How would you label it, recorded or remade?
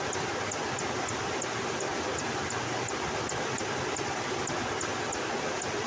recorded